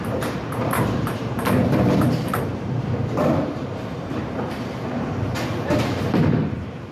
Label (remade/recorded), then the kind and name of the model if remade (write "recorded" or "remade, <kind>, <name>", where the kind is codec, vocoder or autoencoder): remade, vocoder, BigVGAN v2